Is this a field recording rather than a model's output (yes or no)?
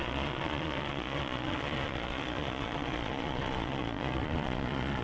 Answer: no